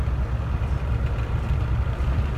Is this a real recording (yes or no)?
yes